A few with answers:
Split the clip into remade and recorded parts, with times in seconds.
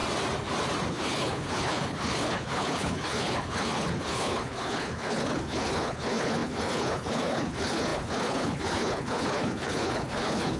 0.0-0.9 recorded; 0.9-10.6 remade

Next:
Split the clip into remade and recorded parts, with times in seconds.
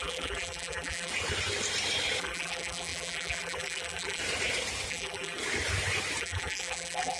0.0-1.1 remade; 1.1-2.2 recorded; 2.2-4.2 remade; 4.2-4.9 recorded; 4.9-5.4 remade; 5.4-6.2 recorded; 6.2-7.2 remade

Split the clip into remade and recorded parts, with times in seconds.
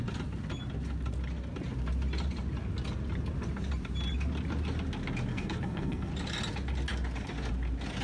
0.0-5.3 recorded; 5.3-6.1 remade; 6.1-8.0 recorded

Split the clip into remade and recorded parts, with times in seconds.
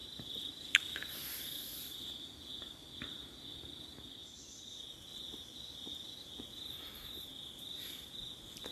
0.0-8.7 recorded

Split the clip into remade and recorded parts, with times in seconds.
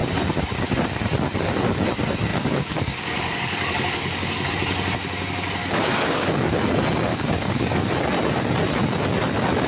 0.0-2.3 recorded; 2.3-4.5 remade; 4.5-5.6 recorded; 5.6-6.6 remade; 6.6-7.1 recorded; 7.1-7.9 remade; 7.9-9.7 recorded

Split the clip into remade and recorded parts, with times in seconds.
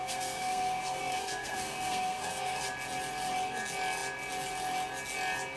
0.0-2.6 remade; 2.6-5.6 recorded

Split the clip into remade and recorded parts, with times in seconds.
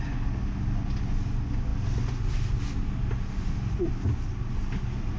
0.0-5.2 recorded